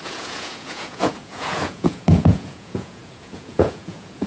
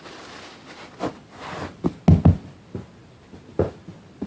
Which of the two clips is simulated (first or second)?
first